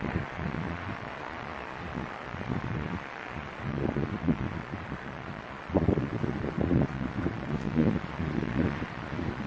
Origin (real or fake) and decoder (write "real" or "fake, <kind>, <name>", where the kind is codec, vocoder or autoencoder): fake, vocoder, Vocos